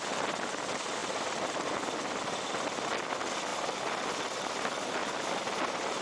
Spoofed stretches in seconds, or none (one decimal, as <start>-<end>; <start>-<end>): none